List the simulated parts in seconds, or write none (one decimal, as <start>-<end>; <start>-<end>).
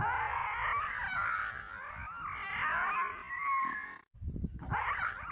none